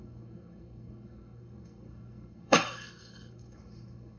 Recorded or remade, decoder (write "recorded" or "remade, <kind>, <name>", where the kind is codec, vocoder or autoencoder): remade, codec, SNAC